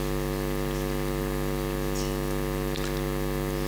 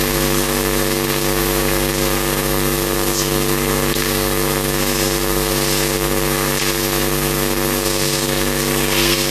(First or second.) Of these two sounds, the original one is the first